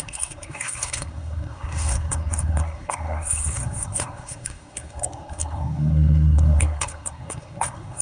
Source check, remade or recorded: remade